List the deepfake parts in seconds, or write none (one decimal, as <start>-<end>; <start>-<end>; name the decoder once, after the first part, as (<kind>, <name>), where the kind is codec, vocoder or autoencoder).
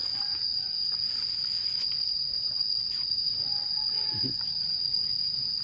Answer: none